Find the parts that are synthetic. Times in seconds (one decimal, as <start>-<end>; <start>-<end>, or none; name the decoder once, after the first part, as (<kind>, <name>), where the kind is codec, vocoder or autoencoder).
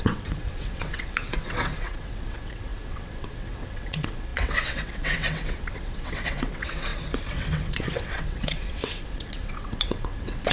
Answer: 0.0-10.5 (vocoder, WaveNeXt)